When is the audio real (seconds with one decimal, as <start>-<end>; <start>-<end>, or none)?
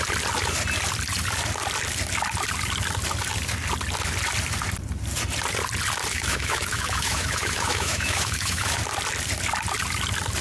0.0-6.1; 8.8-10.4